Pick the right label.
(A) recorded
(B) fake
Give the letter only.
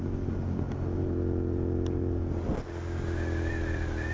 A